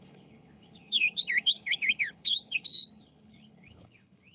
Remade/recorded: remade